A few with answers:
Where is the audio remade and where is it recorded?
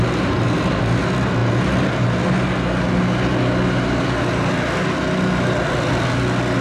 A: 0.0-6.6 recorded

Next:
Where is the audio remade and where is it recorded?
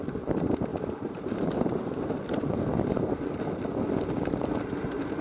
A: 0.0-0.7 recorded; 0.7-3.8 remade; 3.8-5.2 recorded